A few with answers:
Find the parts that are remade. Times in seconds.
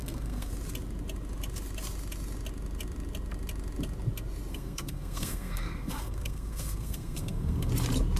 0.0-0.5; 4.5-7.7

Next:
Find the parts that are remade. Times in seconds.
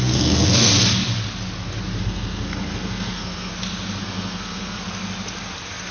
0.0-0.7; 2.0-3.5; 4.0-4.8